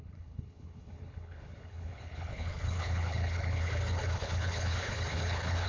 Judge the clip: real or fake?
fake